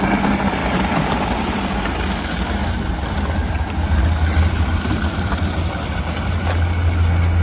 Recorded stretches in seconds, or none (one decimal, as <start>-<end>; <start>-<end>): 0.0-0.6; 1.4-2.6; 6.3-7.4